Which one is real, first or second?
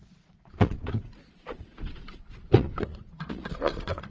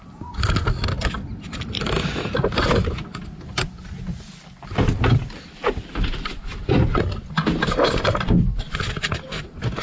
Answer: second